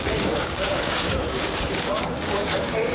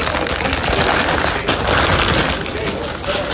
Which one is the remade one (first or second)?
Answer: first